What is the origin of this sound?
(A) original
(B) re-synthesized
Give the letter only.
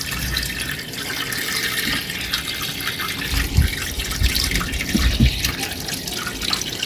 B